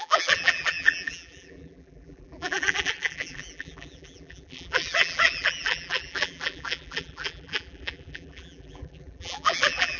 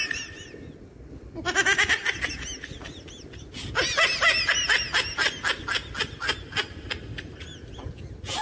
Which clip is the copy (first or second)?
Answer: first